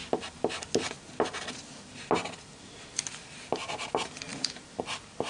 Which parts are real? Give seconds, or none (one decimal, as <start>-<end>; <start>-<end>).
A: 0.0-5.3